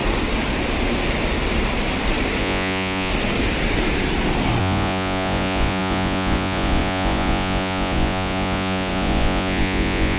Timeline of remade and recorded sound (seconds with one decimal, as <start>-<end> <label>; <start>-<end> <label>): 0.0-2.4 recorded; 2.4-3.1 remade; 3.1-4.6 recorded; 4.6-10.2 remade